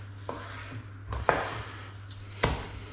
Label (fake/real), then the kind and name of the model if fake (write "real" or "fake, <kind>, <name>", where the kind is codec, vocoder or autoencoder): real